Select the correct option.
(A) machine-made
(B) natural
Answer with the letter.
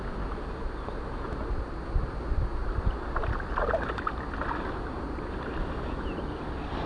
B